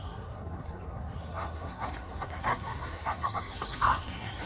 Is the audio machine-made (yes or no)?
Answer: yes